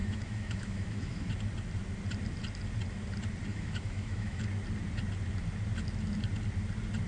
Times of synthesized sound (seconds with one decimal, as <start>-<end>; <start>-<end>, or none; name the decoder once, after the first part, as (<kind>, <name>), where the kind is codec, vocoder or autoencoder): 0.0-1.3 (autoencoder, DAC-VAE); 3.5-4.4